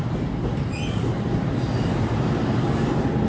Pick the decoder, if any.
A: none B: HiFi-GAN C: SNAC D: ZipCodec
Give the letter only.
A